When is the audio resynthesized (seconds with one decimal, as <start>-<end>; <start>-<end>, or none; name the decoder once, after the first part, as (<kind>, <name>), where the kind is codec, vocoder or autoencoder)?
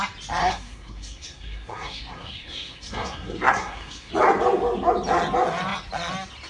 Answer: 0.4-4.1 (codec, SNAC)